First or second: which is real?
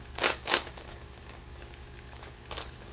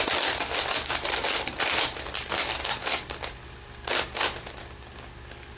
second